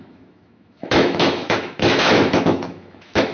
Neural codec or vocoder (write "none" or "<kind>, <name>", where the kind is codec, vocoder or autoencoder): autoencoder, DAC-VAE